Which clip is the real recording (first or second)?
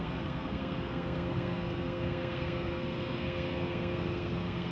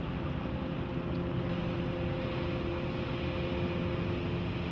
second